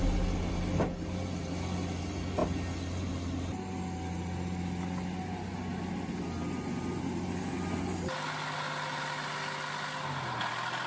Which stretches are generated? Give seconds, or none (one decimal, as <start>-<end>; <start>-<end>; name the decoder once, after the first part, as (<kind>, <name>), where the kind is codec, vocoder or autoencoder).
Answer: none